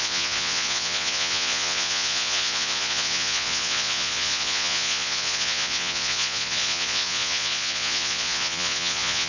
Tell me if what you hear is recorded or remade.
remade